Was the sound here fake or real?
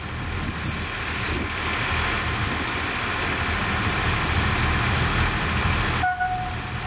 real